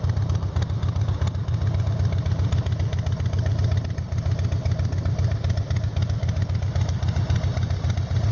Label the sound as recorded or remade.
recorded